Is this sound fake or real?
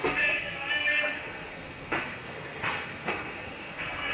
fake